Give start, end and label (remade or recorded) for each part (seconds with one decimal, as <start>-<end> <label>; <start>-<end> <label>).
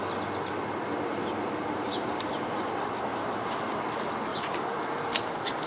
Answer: 0.0-1.1 recorded; 1.1-2.5 remade; 2.5-3.1 recorded; 3.1-3.7 remade; 3.7-4.3 recorded; 4.3-5.1 remade; 5.1-5.7 recorded